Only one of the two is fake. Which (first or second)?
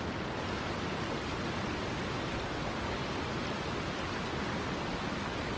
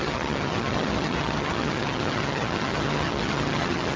second